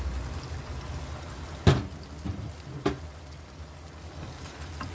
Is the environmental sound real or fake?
real